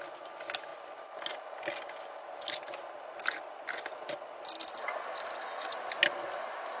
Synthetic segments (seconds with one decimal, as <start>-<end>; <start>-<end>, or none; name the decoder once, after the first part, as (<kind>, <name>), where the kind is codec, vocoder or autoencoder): none